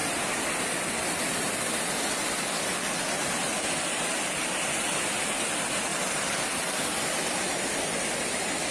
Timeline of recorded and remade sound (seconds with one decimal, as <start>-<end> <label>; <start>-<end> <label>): 0.0-1.6 remade; 1.6-5.9 recorded; 5.9-8.2 remade; 8.2-8.7 recorded